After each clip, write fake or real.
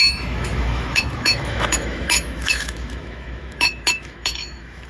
fake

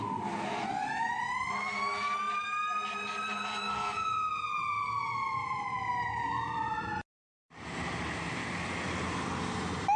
real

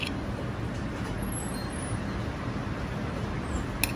real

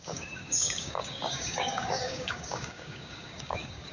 fake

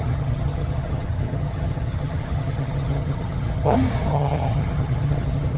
fake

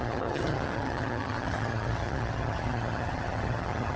fake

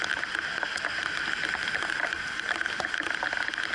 real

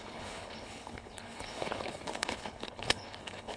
fake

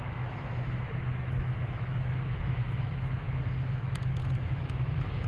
fake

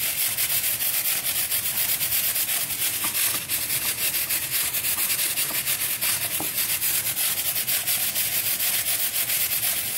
real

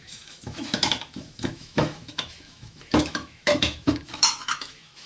fake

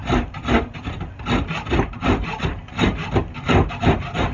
real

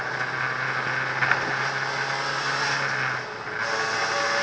real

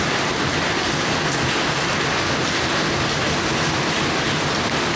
real